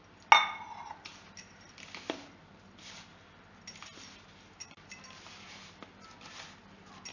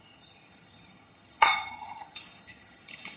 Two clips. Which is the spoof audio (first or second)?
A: second